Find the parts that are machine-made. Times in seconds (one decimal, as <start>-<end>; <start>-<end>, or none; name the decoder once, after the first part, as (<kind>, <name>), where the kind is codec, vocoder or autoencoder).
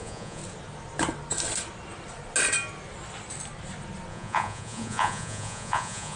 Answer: 0.0-0.4 (vocoder, Vocos); 4.1-6.2